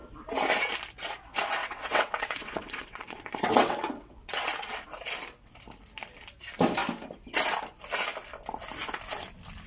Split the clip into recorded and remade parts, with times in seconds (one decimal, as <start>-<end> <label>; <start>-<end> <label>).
0.0-1.6 recorded; 1.6-4.8 remade; 4.8-9.7 recorded